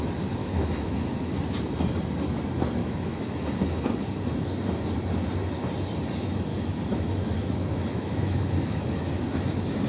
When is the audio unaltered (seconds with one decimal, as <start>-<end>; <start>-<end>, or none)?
0.0-0.4; 1.3-2.8; 3.8-6.5; 9.0-9.9